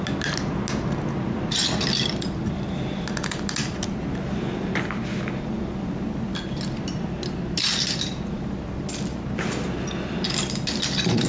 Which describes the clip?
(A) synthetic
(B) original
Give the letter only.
B